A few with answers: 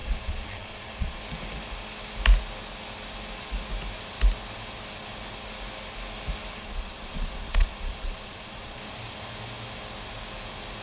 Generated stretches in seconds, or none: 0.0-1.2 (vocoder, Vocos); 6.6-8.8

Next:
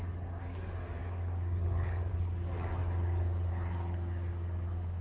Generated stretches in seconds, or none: none

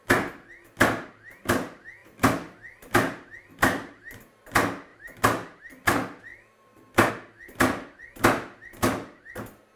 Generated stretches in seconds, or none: 2.0-4.2 (vocoder, BigVGAN v2); 6.3-7.1